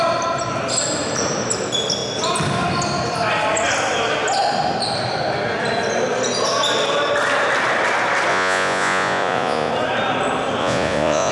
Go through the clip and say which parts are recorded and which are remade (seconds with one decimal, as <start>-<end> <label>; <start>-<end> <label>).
0.0-8.3 recorded; 8.3-9.7 remade; 9.7-10.6 recorded; 10.6-11.3 remade